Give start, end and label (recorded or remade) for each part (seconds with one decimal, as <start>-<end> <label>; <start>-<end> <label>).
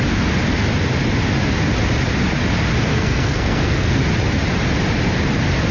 0.0-2.9 recorded; 2.9-4.0 remade; 4.0-5.7 recorded